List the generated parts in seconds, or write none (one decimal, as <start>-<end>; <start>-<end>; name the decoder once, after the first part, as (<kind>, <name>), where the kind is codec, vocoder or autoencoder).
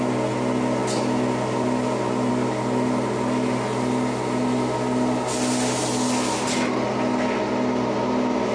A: none